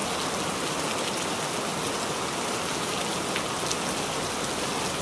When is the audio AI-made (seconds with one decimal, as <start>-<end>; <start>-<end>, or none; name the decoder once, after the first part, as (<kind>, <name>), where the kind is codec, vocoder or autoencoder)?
none